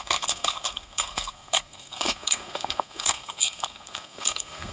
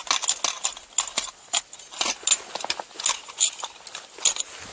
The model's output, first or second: first